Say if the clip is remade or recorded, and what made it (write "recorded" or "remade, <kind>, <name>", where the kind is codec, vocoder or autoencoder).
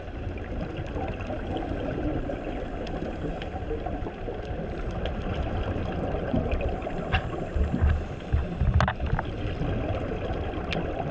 recorded